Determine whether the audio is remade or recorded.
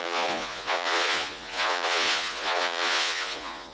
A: remade